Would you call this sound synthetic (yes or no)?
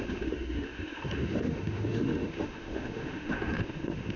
yes